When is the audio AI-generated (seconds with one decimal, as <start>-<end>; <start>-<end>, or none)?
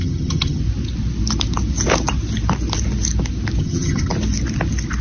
0.0-0.6; 3.6-4.1